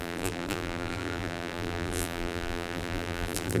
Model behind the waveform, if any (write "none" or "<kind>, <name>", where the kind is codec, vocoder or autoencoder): vocoder, BigVGAN v2